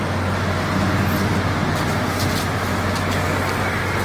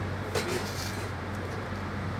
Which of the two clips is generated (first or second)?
second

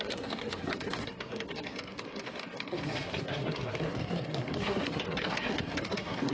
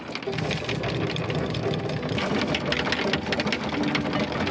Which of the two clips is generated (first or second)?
first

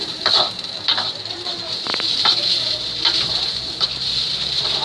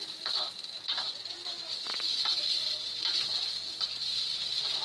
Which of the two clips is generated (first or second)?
first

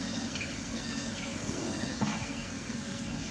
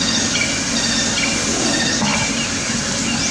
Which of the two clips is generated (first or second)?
first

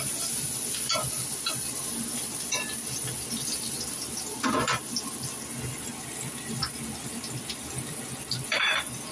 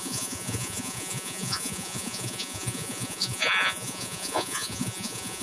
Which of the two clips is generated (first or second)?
second